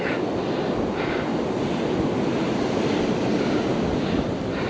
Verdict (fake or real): real